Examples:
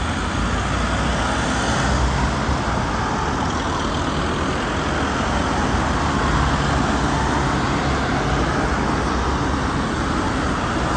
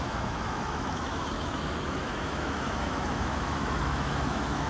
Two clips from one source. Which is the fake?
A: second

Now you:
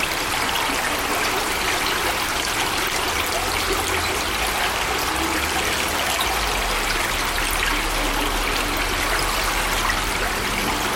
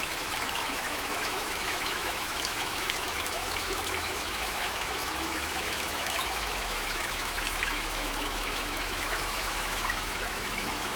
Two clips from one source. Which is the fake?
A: second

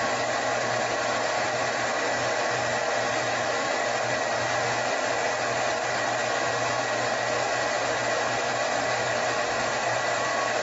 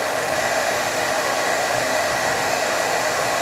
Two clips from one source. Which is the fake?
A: second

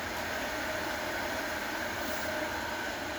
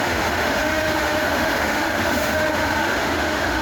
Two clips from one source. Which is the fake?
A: second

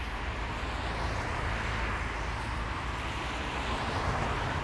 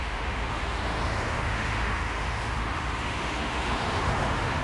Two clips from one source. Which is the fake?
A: second